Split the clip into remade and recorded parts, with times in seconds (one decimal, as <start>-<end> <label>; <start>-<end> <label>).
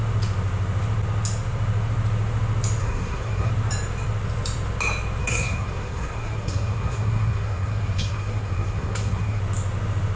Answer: 0.0-2.8 recorded; 2.8-3.5 remade; 3.5-5.2 recorded; 5.2-9.4 remade; 9.4-10.2 recorded